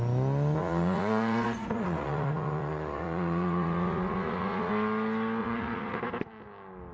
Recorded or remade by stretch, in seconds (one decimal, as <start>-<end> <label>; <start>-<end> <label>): 0.0-0.6 recorded; 0.6-4.7 remade; 4.7-5.4 recorded; 5.4-6.0 remade; 6.0-6.9 recorded